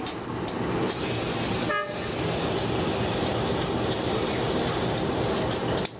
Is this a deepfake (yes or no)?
no